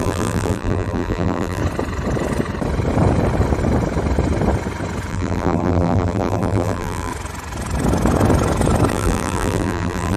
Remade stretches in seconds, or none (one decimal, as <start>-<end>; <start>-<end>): 0.0-1.6; 5.1-7.1; 8.9-10.2